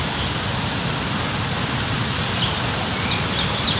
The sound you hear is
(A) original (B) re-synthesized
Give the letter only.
A